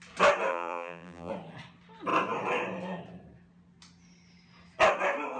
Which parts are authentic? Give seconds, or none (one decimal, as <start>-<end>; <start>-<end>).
0.0-0.5; 1.3-5.4